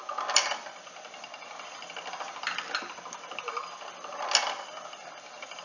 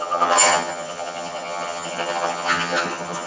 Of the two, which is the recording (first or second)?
first